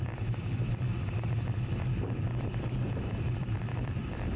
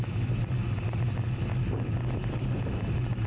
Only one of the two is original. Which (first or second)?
second